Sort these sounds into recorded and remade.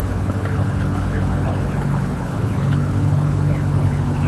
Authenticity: remade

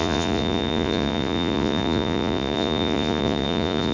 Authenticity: remade